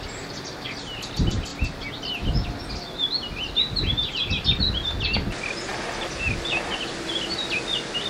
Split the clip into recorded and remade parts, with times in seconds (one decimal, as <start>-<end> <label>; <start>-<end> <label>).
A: 0.0-8.1 recorded